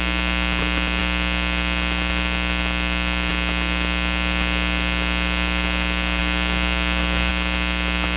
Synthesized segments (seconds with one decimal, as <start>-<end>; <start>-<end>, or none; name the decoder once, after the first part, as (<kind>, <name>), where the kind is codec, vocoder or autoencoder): 6.2-7.3 (codec, DAC)